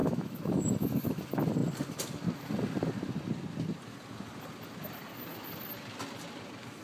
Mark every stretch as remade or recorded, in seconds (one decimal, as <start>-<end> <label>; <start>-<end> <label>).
0.0-1.2 remade; 1.2-6.8 recorded